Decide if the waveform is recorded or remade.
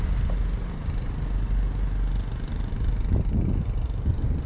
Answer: recorded